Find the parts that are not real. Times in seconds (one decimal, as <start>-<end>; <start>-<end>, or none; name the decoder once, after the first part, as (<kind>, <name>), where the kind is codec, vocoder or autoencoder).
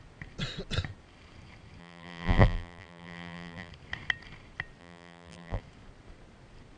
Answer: 1.8-3.7 (vocoder, BigVGAN v2); 4.8-5.6